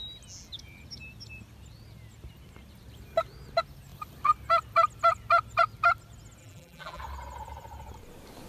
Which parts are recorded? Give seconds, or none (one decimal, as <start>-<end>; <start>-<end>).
0.0-6.4; 7.0-8.5